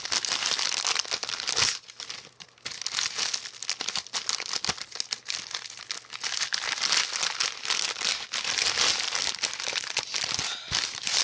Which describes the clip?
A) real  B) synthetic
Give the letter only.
A